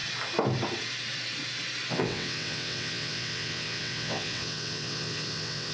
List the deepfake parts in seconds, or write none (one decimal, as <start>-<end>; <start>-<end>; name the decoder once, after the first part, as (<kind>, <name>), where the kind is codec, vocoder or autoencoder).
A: 1.9-5.7 (vocoder, WaveNeXt)